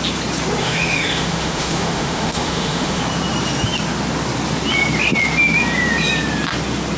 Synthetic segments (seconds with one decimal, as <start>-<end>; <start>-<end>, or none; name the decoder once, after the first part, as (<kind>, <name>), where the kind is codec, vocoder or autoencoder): 0.6-3.0 (autoencoder, DAC-VAE)